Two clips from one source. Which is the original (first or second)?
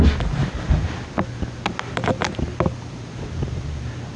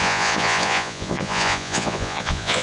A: first